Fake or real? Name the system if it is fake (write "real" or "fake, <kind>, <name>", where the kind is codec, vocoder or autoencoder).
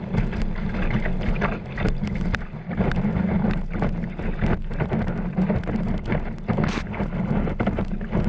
real